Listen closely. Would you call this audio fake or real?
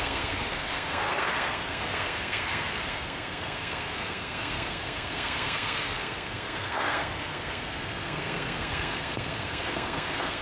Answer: fake